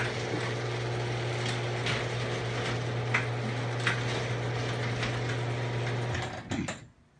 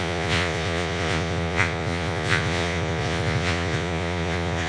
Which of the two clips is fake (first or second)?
second